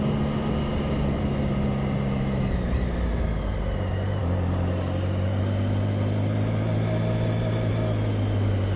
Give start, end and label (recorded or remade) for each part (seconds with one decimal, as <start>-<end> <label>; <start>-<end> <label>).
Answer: 0.0-8.8 recorded